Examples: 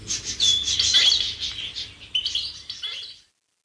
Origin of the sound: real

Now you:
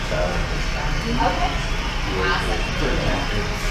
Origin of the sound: real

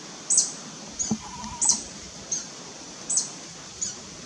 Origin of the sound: real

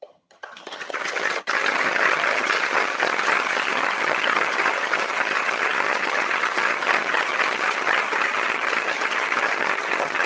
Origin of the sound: fake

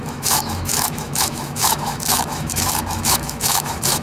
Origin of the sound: fake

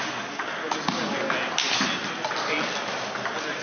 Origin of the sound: real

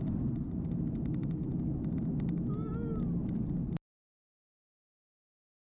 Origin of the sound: real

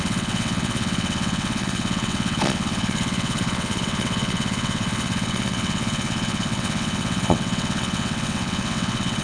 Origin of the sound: fake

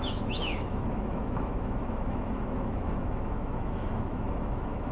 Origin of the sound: fake